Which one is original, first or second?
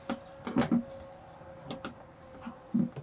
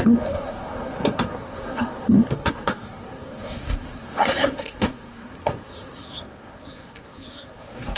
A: first